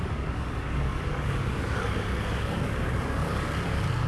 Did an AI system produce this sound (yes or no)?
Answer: yes